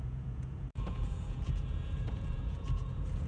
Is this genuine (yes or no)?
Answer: no